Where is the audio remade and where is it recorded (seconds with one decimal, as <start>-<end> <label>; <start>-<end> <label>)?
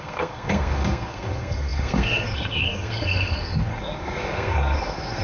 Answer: 0.0-5.2 remade